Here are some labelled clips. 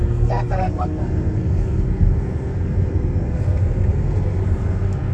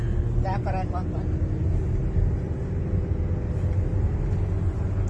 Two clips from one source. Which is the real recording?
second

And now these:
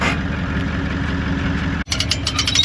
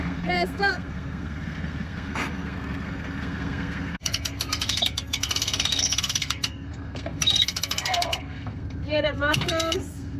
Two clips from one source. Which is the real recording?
first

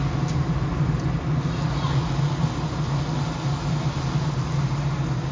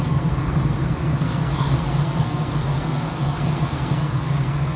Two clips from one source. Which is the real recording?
first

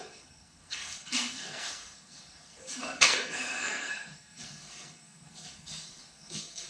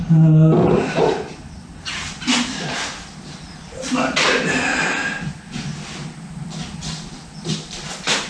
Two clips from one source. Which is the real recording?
second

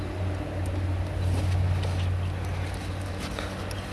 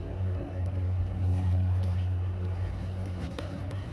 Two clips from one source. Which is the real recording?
first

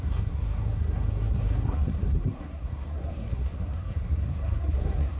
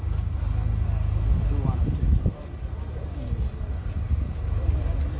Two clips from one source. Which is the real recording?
second